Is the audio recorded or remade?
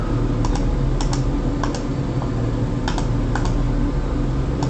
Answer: recorded